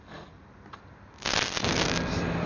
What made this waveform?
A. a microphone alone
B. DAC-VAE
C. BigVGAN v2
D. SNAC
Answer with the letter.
A